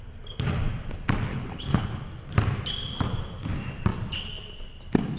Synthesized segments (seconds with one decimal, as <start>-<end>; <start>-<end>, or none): 1.3-2.0